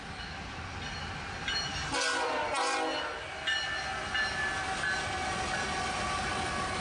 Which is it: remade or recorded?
recorded